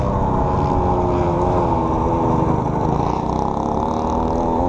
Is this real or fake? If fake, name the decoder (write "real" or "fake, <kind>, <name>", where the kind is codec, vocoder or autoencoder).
real